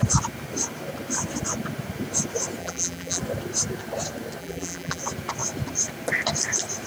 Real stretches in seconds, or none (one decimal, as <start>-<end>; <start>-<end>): 0.0-2.6; 3.2-4.4; 5.0-6.9